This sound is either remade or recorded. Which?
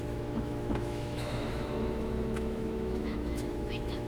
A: remade